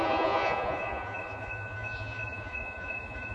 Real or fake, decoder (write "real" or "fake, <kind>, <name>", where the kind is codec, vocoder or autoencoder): fake, vocoder, Vocos